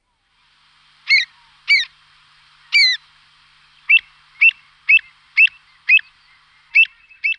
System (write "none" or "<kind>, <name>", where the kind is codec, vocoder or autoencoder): none